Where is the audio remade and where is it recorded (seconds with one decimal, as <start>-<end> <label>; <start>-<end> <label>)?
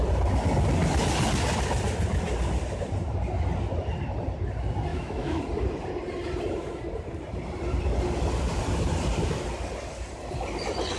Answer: 0.0-4.9 recorded; 4.9-5.4 remade; 5.4-11.0 recorded